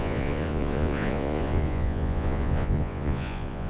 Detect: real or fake fake